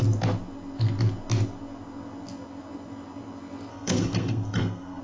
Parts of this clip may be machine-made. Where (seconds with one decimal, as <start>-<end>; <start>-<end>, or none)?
3.7-5.0